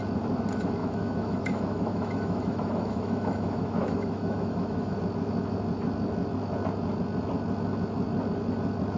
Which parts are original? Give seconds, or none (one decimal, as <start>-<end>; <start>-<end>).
0.0-0.8; 5.0-9.0